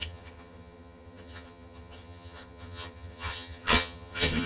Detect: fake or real fake